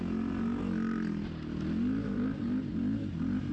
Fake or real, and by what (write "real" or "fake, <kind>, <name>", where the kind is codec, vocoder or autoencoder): real